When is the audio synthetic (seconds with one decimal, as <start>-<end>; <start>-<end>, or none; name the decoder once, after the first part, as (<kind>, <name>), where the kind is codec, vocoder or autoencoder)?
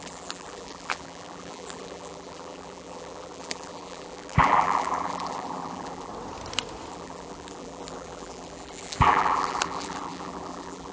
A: 0.0-6.1 (vocoder, BigVGAN v2); 6.9-10.9